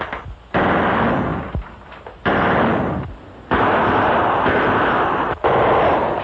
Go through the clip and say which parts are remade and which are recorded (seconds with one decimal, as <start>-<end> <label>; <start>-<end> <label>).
0.0-6.2 recorded